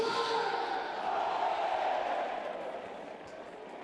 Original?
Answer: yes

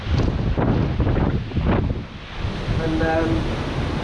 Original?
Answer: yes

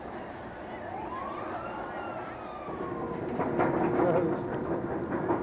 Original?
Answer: yes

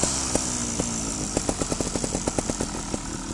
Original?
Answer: yes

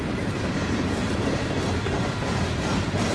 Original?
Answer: no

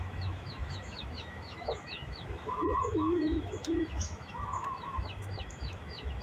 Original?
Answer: no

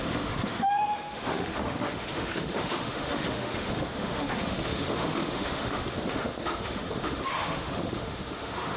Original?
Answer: no